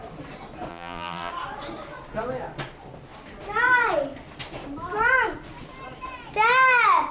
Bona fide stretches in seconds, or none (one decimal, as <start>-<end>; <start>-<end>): 0.0-0.7; 1.3-7.1